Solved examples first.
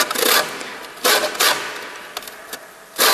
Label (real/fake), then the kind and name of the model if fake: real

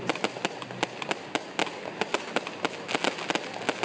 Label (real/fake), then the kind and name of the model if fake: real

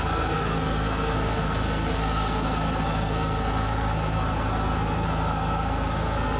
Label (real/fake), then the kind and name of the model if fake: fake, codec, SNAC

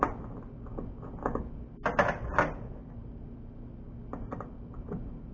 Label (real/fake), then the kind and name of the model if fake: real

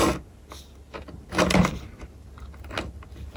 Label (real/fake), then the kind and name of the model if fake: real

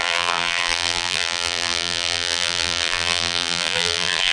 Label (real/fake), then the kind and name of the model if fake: fake, vocoder, BigVGAN v2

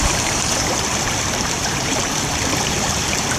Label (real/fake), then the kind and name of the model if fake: fake, vocoder, BigVGAN v2